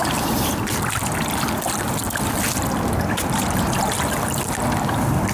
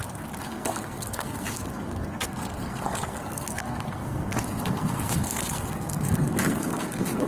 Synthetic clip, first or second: second